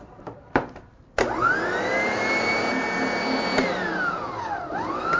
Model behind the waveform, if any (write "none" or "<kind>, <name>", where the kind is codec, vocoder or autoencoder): none